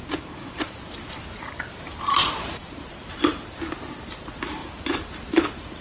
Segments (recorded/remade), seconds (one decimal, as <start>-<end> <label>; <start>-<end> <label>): 0.0-0.8 remade; 0.8-2.1 recorded; 2.1-2.9 remade; 2.9-4.6 recorded; 4.6-5.8 remade

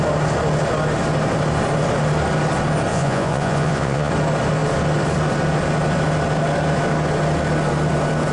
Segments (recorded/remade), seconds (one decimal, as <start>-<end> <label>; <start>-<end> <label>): 0.0-2.9 recorded; 2.9-4.1 remade; 4.1-8.3 recorded

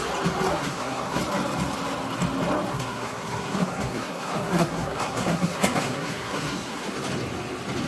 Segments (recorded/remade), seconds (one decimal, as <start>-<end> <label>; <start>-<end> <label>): 0.0-0.5 recorded; 0.5-1.2 remade; 1.2-2.7 recorded; 2.7-6.9 remade; 6.9-7.9 recorded

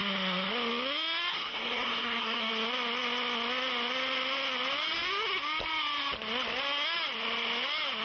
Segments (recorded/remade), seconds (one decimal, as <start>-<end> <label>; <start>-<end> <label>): 0.0-1.3 recorded; 1.3-2.5 remade; 2.5-8.0 recorded

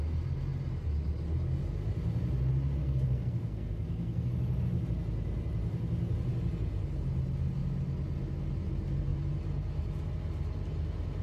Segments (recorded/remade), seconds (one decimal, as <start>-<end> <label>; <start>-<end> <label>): 0.0-2.8 recorded; 2.8-4.3 remade; 4.3-11.2 recorded

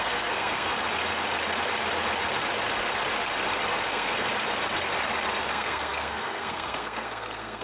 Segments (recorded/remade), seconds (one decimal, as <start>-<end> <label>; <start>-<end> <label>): 0.0-0.7 remade; 0.7-3.9 recorded; 3.9-4.3 remade; 4.3-5.5 recorded; 5.5-7.6 remade